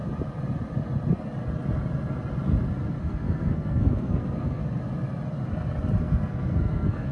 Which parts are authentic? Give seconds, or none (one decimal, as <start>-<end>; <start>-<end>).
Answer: 0.0-3.0; 4.6-6.0